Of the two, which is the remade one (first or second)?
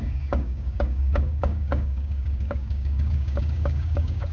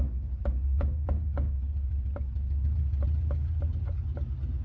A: first